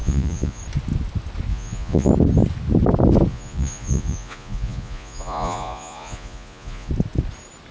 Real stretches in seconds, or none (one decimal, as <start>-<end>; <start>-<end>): 0.6-1.5; 2.1-3.3; 6.9-7.7